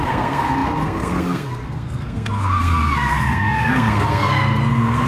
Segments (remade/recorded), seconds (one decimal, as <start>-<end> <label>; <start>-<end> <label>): 0.0-5.1 remade